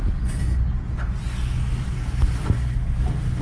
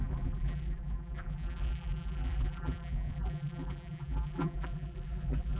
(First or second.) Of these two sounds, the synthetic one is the second